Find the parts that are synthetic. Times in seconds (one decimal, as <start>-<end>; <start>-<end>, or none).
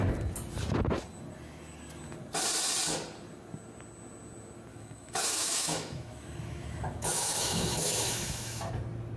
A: 4.7-8.7